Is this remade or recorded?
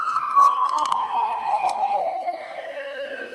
remade